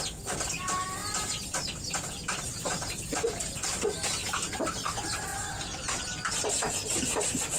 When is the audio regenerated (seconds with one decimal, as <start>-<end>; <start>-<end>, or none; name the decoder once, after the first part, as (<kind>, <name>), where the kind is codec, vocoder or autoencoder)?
none